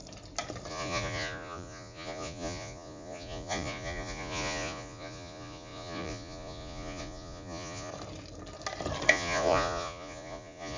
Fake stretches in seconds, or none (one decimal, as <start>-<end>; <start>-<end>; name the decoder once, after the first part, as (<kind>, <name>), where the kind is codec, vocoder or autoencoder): 0.7-7.9 (vocoder, Vocos); 9.1-10.8